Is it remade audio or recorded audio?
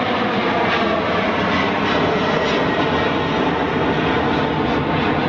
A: recorded